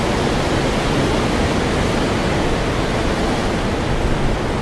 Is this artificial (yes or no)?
no